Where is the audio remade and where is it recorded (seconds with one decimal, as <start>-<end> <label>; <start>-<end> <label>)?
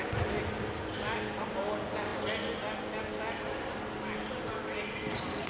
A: 0.0-5.5 recorded